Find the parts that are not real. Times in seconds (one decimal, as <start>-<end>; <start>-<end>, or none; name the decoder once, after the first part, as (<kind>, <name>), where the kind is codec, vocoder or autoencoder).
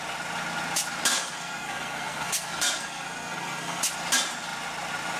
1.1-3.8 (codec, SNAC)